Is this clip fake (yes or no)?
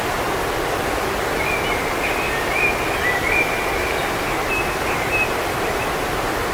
no